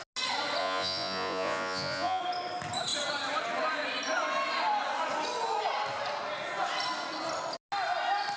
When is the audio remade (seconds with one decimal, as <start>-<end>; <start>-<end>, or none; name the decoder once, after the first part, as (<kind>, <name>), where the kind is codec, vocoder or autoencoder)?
0.6-2.2 (vocoder, Vocos)